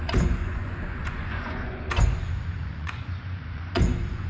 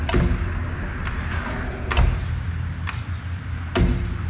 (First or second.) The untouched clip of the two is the second